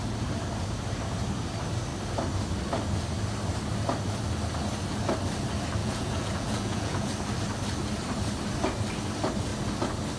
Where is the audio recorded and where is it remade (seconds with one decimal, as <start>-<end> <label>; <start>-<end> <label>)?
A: 0.0-5.8 recorded; 5.8-7.1 remade; 7.1-10.2 recorded